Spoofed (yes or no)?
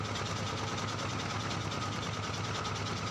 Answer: no